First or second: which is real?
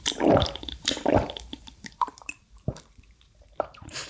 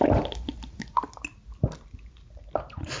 second